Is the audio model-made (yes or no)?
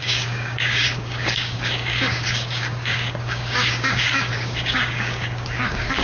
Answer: yes